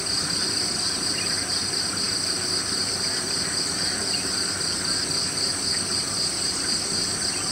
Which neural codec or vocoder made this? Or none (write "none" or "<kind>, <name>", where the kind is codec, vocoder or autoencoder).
none